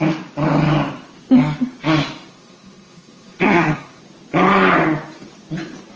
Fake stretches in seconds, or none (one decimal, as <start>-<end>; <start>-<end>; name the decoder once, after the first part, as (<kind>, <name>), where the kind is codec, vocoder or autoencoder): 2.3-4.0 (codec, SNAC)